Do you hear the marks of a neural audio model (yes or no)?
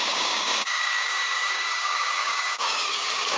yes